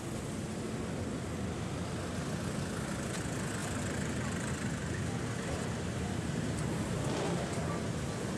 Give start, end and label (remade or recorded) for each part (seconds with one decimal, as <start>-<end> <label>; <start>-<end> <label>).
0.0-3.6 recorded; 3.6-4.5 remade; 4.5-8.4 recorded